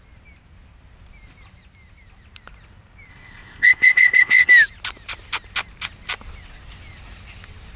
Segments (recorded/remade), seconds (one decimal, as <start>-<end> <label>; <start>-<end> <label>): 0.0-3.1 recorded; 3.1-4.5 remade; 4.5-7.8 recorded